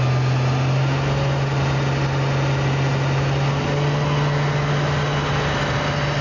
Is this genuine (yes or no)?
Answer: yes